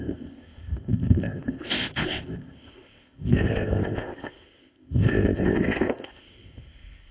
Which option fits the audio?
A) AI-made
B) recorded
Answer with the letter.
A